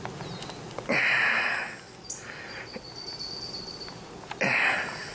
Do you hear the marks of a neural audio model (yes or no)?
no